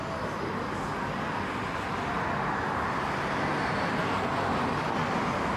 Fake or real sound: real